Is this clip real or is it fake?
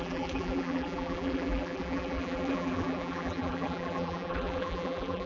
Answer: fake